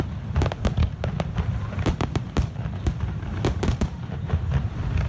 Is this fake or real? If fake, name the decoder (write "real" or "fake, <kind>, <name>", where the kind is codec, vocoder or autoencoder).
fake, vocoder, BigVGAN v2